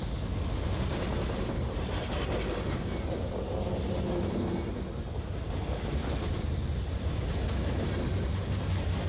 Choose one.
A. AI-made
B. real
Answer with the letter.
B